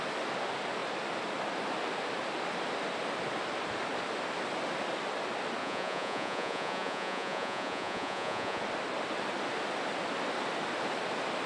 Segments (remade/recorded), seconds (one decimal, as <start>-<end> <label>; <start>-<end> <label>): 0.0-5.6 recorded; 5.6-8.6 remade; 8.6-11.5 recorded